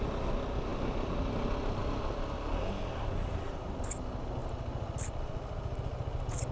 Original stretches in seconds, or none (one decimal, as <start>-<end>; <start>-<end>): 0.0-6.5